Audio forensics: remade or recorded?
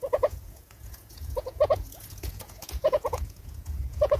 remade